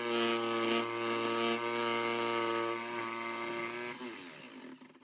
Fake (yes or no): no